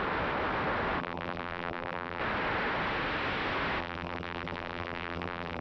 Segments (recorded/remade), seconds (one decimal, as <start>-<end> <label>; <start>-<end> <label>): 0.0-1.0 recorded; 1.0-2.2 remade; 2.2-3.8 recorded; 3.8-5.6 remade